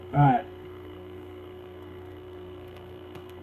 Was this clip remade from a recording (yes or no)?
yes